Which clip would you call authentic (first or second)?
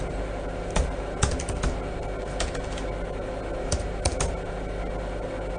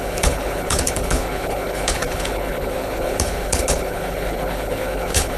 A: first